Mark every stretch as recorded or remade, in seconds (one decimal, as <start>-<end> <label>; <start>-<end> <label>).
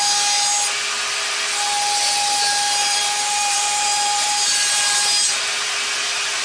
0.0-2.8 recorded; 2.8-5.6 remade; 5.6-6.4 recorded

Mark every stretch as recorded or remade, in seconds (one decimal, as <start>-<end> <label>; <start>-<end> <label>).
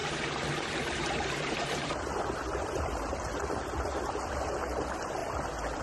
0.0-3.5 remade; 3.5-5.8 recorded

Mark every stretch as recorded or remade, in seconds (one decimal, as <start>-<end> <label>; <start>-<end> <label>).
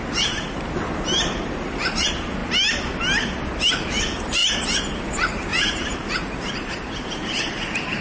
0.0-2.4 remade; 2.4-3.7 recorded; 3.7-8.0 remade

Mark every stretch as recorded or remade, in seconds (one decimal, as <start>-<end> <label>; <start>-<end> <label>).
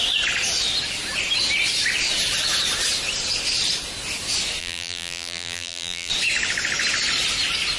0.0-4.6 recorded; 4.6-6.1 remade; 6.1-7.8 recorded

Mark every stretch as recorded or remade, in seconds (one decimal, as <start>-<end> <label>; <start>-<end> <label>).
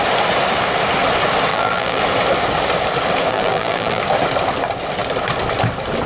0.0-1.5 recorded; 1.5-2.0 remade; 2.0-3.3 recorded; 3.3-4.0 remade; 4.0-6.1 recorded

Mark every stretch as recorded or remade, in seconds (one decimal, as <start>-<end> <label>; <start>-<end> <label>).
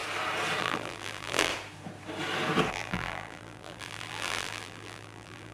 0.0-0.6 recorded; 0.6-1.5 remade; 1.5-2.7 recorded; 2.7-5.5 remade